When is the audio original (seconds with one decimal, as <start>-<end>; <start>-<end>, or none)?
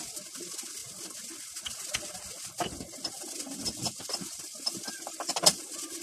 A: 0.0-6.0